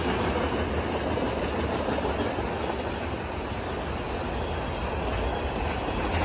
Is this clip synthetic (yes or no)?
no